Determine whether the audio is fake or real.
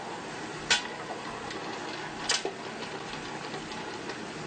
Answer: real